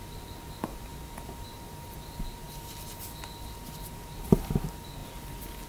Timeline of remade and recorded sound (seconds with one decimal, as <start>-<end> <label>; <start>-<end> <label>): 0.0-0.9 remade; 0.9-1.7 recorded; 1.7-2.9 remade; 2.9-3.6 recorded; 3.6-5.0 remade; 5.0-5.7 recorded